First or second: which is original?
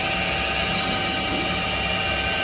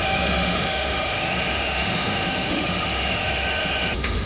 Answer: first